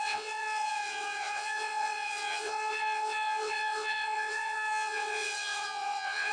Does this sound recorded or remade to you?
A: remade